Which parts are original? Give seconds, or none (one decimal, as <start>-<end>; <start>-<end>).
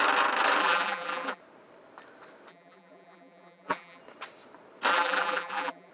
0.0-0.6; 1.4-2.5; 4.0-4.9